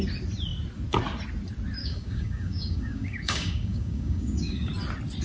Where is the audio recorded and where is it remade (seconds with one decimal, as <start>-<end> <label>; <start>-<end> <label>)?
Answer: 0.0-1.8 recorded; 1.8-4.7 remade; 4.7-5.2 recorded